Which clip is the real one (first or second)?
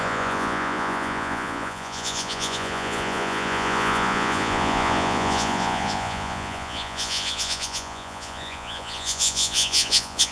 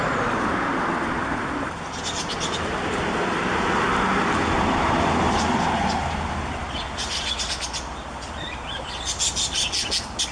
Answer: second